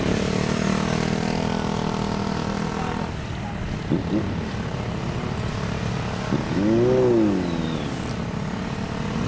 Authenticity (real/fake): real